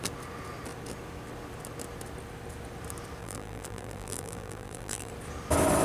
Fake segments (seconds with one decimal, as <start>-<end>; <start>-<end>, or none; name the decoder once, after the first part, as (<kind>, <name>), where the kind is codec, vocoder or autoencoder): 3.2-5.1 (vocoder, BigVGAN v2)